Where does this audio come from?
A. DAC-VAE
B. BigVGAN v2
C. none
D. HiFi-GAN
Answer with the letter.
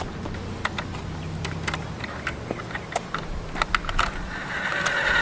C